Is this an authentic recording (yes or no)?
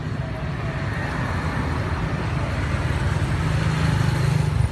yes